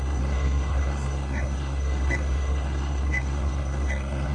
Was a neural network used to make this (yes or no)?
yes